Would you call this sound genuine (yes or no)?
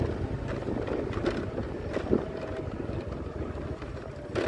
yes